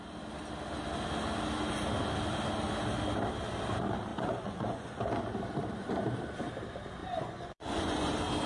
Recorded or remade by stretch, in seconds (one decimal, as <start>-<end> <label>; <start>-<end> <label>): 0.0-4.1 recorded; 4.1-5.0 remade; 5.0-7.0 recorded; 7.0-8.1 remade; 8.1-8.5 recorded